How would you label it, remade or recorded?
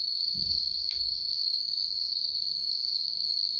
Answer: remade